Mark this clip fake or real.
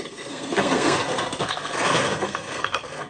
fake